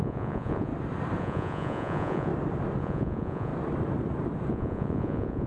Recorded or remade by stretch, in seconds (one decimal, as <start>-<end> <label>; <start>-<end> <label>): 0.0-0.7 remade; 0.7-1.2 recorded; 1.2-2.3 remade; 2.3-2.8 recorded; 2.8-3.5 remade; 3.5-4.5 recorded; 4.5-5.5 remade